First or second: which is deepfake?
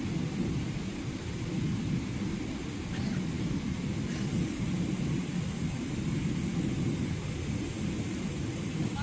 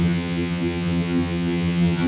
second